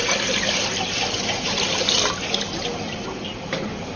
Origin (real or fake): real